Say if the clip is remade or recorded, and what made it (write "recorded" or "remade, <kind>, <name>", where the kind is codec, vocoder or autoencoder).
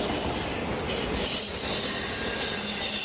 recorded